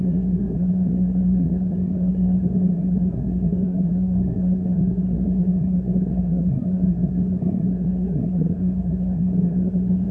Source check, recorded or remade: remade